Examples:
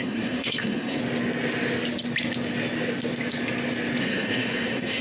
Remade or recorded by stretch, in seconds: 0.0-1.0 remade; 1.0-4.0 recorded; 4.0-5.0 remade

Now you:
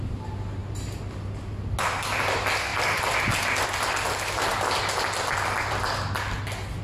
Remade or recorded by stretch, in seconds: 0.0-2.7 recorded; 2.7-3.6 remade; 3.6-4.5 recorded; 4.5-5.8 remade; 5.8-6.8 recorded

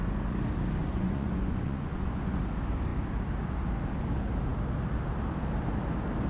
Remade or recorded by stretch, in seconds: 0.0-0.8 recorded; 0.8-2.4 remade; 2.4-6.3 recorded

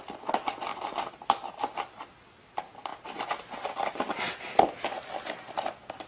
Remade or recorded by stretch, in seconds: 0.0-0.7 recorded; 0.7-1.5 remade; 1.5-6.1 recorded

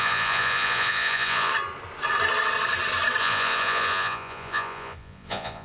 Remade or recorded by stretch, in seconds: 0.0-1.5 remade; 1.5-3.2 recorded; 3.2-5.6 remade

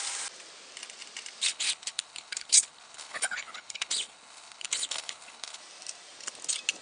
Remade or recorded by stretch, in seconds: 0.0-1.5 recorded; 1.5-5.6 remade; 5.6-6.8 recorded

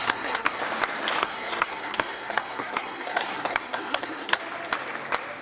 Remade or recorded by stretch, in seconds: 0.0-0.6 remade; 0.6-1.2 recorded; 1.2-4.4 remade; 4.4-5.4 recorded

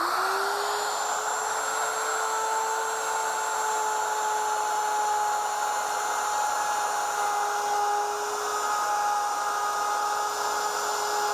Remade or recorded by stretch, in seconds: 0.0-2.1 recorded; 2.1-2.8 remade; 2.8-11.3 recorded